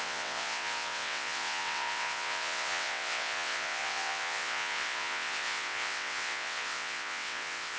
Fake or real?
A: fake